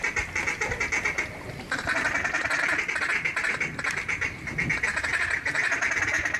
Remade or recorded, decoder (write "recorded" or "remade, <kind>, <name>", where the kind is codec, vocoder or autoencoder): recorded